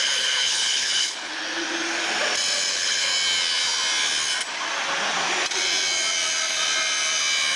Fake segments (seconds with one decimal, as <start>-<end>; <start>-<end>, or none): 0.0-1.3; 2.7-3.1

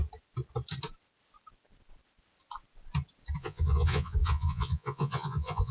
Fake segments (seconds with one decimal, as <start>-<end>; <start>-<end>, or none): 3.4-5.7

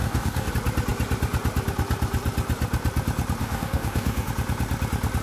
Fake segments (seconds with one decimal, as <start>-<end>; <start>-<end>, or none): 0.0-0.5; 3.4-4.3

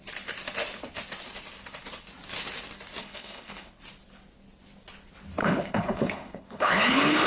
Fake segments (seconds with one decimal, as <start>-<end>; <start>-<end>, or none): 3.0-3.8; 5.4-7.3

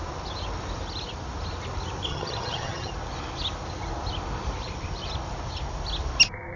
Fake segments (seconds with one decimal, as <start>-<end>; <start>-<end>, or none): 2.1-2.9